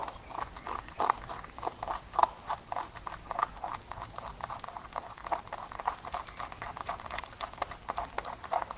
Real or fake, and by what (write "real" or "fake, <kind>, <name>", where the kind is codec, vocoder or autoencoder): real